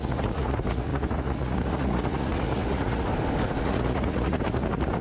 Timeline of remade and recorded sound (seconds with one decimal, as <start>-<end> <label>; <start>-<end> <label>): 0.0-3.1 remade; 3.1-3.6 recorded; 3.6-5.0 remade